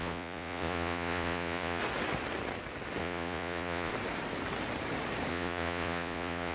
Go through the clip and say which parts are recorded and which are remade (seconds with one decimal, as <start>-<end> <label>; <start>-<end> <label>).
0.0-1.8 remade; 1.8-3.0 recorded; 3.0-3.9 remade; 3.9-5.3 recorded; 5.3-6.5 remade

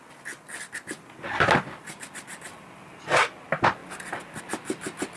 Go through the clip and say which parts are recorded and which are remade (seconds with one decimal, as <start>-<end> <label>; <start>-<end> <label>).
0.0-5.2 recorded

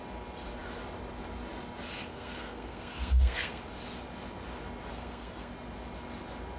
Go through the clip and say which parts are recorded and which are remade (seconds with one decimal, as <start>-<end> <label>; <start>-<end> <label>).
0.0-2.1 recorded; 2.1-3.6 remade; 3.6-4.9 recorded; 4.9-5.5 remade; 5.5-6.6 recorded

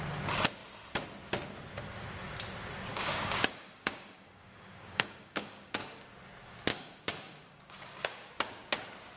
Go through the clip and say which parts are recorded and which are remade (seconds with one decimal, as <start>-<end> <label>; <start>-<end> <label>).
0.0-2.9 recorded; 2.9-6.1 remade; 6.1-6.7 recorded; 6.7-8.3 remade; 8.3-9.2 recorded

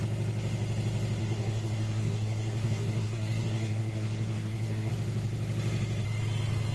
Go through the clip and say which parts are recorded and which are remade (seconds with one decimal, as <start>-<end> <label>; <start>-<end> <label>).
0.0-1.2 recorded; 1.2-4.9 remade; 4.9-6.7 recorded